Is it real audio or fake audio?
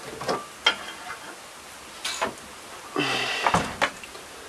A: real